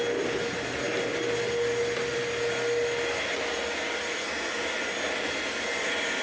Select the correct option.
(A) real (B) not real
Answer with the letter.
A